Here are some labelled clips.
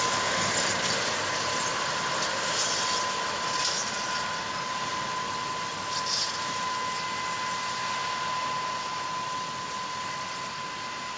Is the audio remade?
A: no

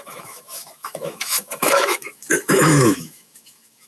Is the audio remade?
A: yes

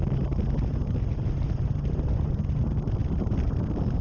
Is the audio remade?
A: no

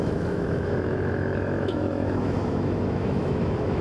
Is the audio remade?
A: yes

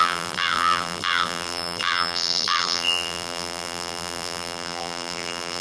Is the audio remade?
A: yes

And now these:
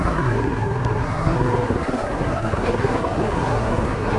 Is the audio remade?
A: yes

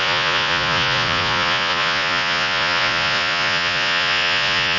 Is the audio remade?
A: yes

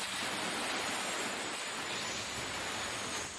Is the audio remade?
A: no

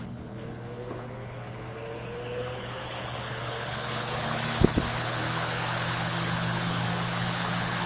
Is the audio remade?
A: yes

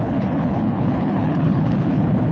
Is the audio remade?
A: yes